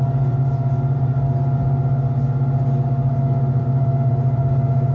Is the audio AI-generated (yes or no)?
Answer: no